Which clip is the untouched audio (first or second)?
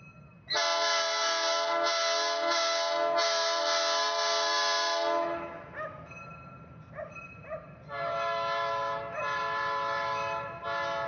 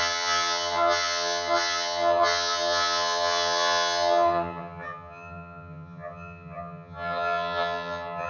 first